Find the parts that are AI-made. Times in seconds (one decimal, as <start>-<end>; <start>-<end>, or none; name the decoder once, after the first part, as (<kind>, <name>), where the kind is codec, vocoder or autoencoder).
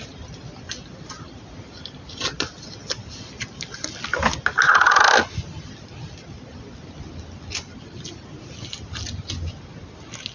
none